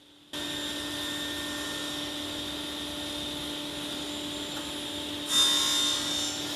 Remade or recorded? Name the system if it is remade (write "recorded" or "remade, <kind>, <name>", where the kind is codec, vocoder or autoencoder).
recorded